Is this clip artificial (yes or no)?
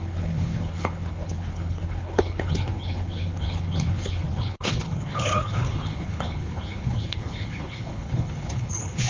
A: yes